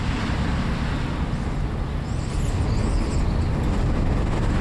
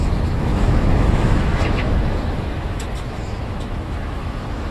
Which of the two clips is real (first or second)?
first